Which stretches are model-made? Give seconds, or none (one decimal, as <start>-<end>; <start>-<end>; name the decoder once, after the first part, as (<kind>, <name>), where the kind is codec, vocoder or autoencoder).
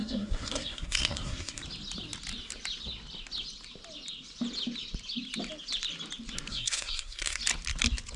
0.0-1.6 (codec, SNAC); 6.5-7.4